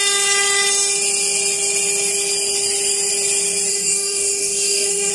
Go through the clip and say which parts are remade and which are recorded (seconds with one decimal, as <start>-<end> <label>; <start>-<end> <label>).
0.0-3.7 recorded; 3.7-5.1 remade